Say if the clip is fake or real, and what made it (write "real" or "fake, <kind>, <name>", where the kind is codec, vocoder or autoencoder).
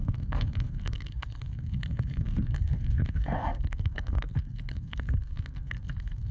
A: fake, codec, SNAC